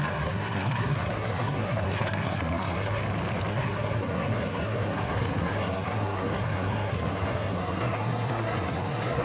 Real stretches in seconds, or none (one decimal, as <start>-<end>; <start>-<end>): 3.0-3.5